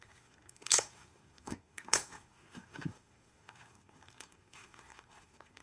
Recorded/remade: remade